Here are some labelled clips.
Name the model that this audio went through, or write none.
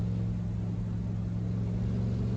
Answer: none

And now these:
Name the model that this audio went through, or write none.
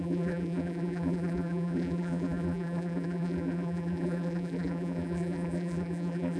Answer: vocoder, BigVGAN v2